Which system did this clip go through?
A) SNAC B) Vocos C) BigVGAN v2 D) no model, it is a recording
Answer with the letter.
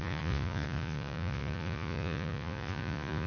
B